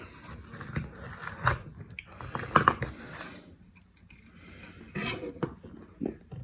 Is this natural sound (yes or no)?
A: yes